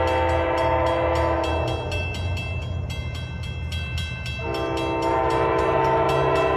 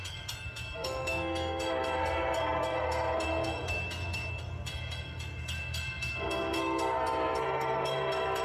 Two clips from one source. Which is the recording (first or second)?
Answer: first